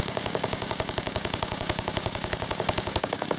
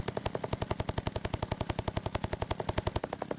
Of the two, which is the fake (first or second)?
first